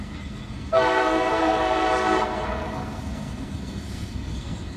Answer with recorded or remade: remade